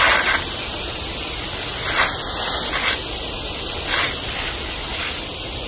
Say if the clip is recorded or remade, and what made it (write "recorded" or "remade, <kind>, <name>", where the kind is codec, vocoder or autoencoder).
recorded